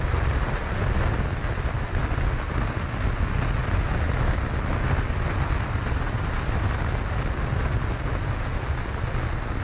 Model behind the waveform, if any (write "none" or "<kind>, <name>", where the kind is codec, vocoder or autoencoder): none